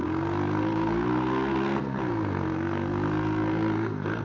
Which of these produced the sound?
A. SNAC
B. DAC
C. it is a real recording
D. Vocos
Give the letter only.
A